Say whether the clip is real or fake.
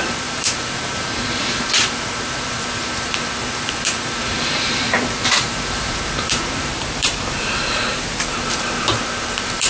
fake